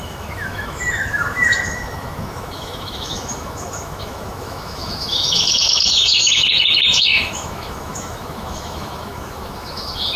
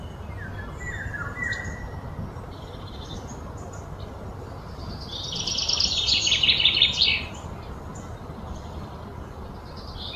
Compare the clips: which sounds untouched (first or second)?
second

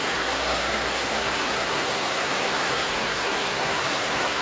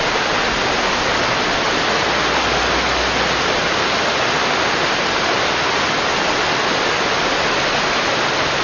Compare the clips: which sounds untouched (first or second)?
second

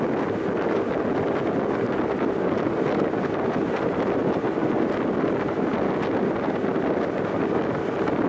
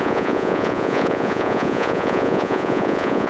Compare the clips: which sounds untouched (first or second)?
first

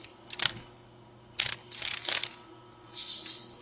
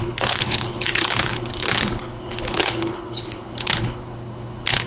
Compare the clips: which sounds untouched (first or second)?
first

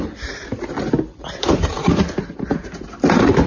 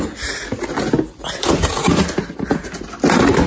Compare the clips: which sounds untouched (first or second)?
second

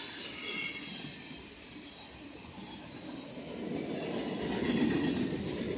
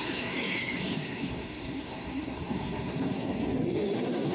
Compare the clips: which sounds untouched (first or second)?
first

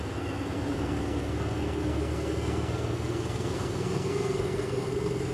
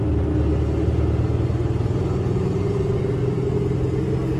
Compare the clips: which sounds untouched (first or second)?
second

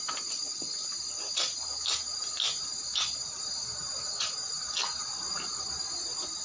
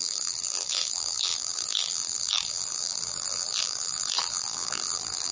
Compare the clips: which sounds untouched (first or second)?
first